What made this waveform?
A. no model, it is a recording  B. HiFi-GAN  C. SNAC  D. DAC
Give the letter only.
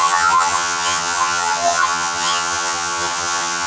B